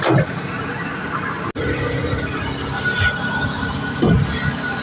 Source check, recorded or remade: recorded